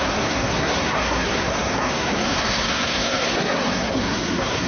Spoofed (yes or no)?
yes